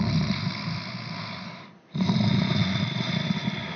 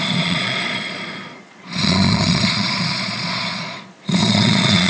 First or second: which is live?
first